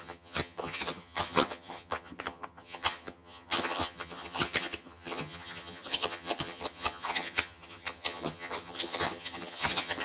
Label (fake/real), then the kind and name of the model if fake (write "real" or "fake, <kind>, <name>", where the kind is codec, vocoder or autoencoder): fake, vocoder, HiFi-GAN